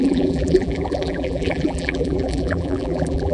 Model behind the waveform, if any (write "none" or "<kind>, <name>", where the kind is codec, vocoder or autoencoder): vocoder, BigVGAN v2